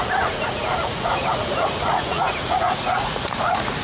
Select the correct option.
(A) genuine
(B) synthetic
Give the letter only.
B